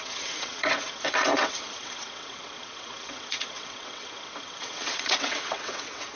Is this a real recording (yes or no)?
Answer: no